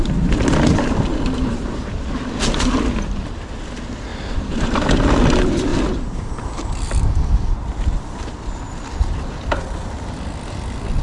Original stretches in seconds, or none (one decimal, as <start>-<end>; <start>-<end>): 0.0-1.1; 2.1-4.1; 4.9-5.7; 6.3-11.0